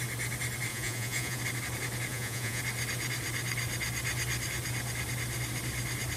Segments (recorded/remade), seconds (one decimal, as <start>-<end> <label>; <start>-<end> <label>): 0.0-0.7 recorded; 0.7-1.4 remade; 1.4-2.1 recorded; 2.1-2.6 remade; 2.6-6.2 recorded